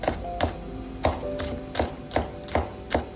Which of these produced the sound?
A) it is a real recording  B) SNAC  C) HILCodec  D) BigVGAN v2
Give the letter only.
A